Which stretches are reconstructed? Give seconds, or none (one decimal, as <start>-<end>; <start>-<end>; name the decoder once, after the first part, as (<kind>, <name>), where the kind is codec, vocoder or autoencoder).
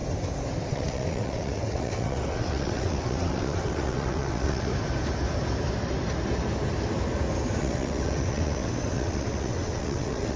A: 0.7-4.7 (vocoder, WaveNeXt); 7.6-10.4